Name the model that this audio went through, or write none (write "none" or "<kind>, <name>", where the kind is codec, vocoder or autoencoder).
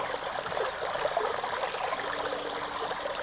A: none